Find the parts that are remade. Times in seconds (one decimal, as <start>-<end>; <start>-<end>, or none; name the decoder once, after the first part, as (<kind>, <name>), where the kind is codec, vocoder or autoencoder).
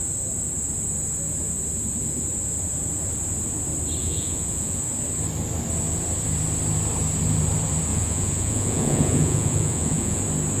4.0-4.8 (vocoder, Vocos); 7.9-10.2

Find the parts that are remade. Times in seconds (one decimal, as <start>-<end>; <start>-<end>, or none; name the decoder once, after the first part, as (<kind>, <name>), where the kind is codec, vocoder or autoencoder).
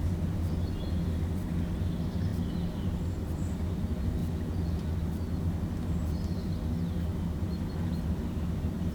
4.2-4.9 (vocoder, Vocos)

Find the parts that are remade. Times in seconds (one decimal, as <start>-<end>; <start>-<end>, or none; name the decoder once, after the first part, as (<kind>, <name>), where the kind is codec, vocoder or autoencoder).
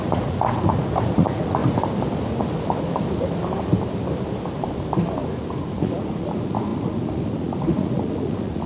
0.0-1.6 (vocoder, Vocos); 5.6-8.7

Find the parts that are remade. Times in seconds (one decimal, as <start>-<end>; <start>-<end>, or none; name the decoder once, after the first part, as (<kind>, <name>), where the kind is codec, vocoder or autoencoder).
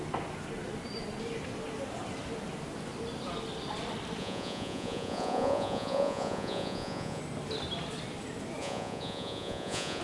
4.2-7.2 (vocoder, Vocos); 8.6-10.0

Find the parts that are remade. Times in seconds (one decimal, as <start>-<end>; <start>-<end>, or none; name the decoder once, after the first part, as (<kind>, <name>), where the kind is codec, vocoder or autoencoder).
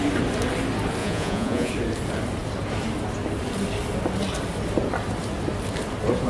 1.0-1.7 (vocoder, Vocos)